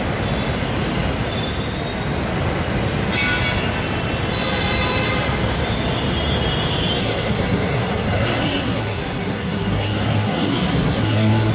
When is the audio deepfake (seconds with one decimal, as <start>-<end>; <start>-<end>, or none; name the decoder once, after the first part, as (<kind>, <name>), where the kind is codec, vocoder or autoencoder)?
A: 7.0-11.5 (codec, SNAC)